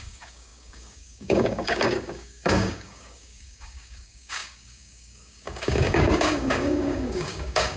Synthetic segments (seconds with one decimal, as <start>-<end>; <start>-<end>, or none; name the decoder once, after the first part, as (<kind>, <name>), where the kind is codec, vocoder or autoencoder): 0.0-7.8 (codec, DAC)